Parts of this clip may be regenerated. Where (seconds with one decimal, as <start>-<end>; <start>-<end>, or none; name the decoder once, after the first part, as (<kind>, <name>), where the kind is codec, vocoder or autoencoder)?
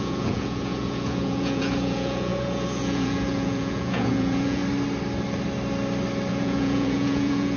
0.0-4.6 (vocoder, Vocos); 6.3-7.6